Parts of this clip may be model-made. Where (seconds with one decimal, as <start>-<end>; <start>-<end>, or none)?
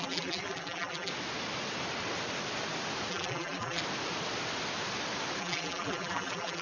0.0-1.1; 3.1-3.8; 5.4-6.6